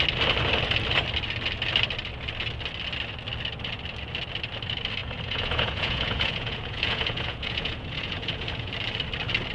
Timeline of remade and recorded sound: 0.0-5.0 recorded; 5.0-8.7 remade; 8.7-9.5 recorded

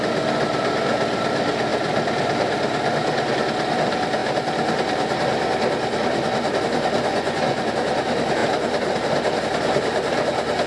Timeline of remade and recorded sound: 0.0-7.1 recorded; 7.1-7.7 remade; 7.7-10.7 recorded

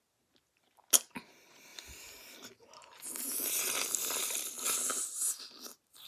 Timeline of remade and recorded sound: 0.0-6.1 recorded

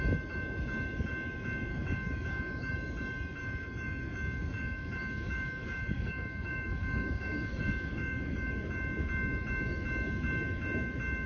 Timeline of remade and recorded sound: 0.0-1.7 recorded; 1.7-2.7 remade; 2.7-3.4 recorded; 3.4-8.5 remade; 8.5-11.3 recorded

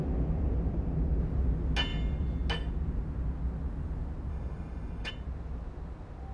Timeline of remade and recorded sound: 0.0-4.3 recorded; 4.3-5.1 remade; 5.1-6.3 recorded

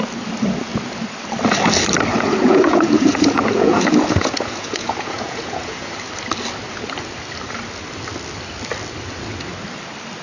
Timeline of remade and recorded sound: 0.0-2.1 recorded; 2.1-5.9 remade; 5.9-10.2 recorded

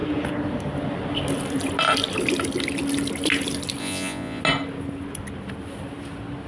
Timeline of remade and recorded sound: 0.0-3.8 recorded; 3.8-4.4 remade; 4.4-6.5 recorded